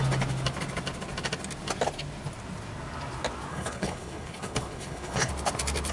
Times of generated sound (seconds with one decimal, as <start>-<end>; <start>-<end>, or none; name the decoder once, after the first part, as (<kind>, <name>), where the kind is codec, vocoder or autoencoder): 3.5-5.3 (codec, HILCodec)